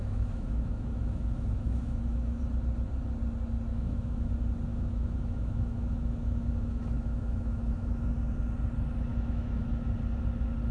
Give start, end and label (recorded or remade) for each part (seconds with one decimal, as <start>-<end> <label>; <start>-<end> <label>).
0.0-2.4 remade; 2.4-3.7 recorded; 3.7-4.3 remade; 4.3-4.7 recorded; 4.7-8.1 remade; 8.1-9.1 recorded; 9.1-9.7 remade; 9.7-10.7 recorded